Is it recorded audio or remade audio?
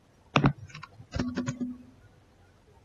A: recorded